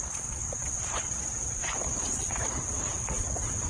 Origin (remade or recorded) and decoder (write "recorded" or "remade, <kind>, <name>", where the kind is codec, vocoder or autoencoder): remade, vocoder, WaveNeXt